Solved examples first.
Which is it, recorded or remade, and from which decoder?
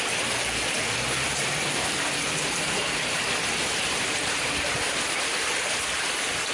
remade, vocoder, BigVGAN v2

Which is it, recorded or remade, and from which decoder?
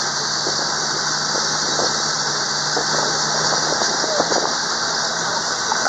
recorded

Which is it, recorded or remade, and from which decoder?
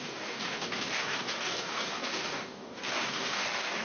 remade, codec, DAC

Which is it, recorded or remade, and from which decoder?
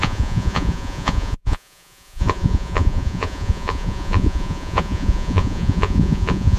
remade, vocoder, Vocos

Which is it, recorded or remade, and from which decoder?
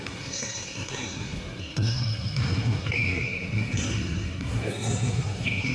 remade, codec, SNAC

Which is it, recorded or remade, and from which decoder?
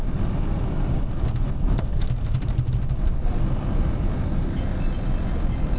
recorded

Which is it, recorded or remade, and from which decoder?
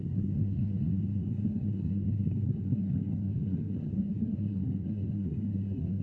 remade, codec, SNAC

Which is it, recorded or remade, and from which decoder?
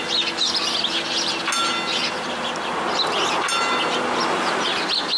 recorded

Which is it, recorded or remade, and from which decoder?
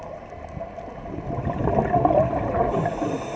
recorded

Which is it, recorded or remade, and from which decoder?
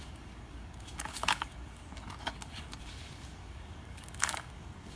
remade, codec, DAC